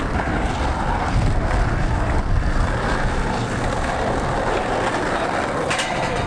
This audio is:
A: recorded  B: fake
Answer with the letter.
A